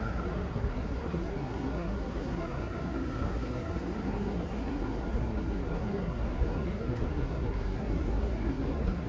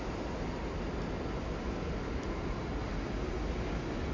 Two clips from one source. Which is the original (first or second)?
second